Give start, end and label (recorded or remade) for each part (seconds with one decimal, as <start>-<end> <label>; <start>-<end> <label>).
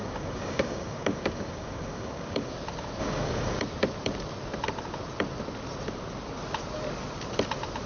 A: 0.0-2.5 remade; 2.5-3.0 recorded; 3.0-3.6 remade; 3.6-7.9 recorded